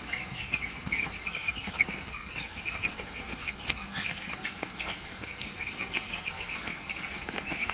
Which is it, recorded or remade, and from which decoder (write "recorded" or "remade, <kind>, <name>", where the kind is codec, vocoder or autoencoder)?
remade, codec, SNAC